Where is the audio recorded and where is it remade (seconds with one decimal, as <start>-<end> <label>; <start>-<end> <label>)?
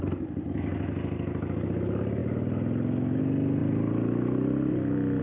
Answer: 0.0-5.2 recorded